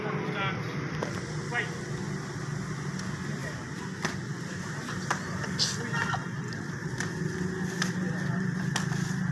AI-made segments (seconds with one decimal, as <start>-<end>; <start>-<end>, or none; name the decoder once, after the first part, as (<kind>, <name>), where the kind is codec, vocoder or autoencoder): none